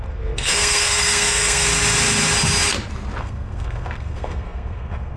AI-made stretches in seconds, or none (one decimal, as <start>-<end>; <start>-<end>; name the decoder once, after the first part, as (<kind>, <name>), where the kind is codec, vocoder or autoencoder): 0.0-1.7 (codec, SNAC); 3.2-5.2